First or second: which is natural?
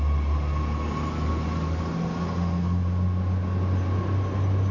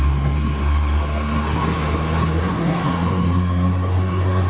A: first